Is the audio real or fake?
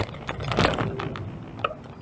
real